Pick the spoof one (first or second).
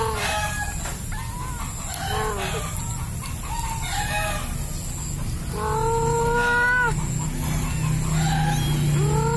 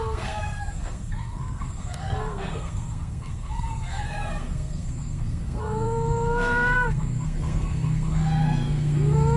second